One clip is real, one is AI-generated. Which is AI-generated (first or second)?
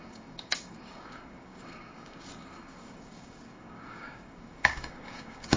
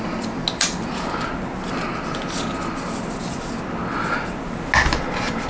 first